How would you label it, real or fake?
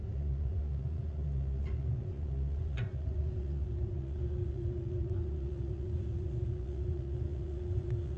fake